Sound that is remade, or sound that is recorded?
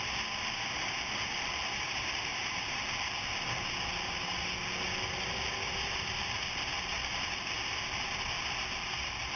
recorded